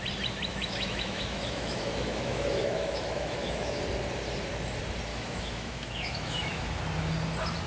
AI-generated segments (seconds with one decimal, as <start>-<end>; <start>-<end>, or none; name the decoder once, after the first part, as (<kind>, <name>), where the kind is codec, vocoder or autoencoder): 0.5-3.8 (autoencoder, DAC-VAE); 5.1-6.8